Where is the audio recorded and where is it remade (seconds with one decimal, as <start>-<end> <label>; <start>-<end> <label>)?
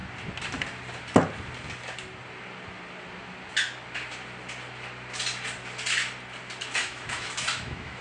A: 0.0-6.8 recorded; 6.8-8.0 remade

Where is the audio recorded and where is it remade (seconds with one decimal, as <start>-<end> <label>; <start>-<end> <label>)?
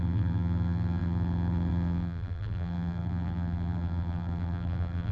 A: 0.0-5.1 remade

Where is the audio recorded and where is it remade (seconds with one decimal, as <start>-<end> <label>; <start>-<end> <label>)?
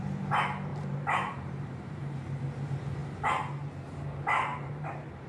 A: 0.0-0.7 recorded; 0.7-2.1 remade; 2.1-4.5 recorded; 4.5-5.3 remade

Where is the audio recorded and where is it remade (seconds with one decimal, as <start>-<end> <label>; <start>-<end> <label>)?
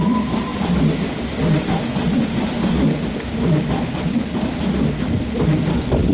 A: 0.0-6.1 recorded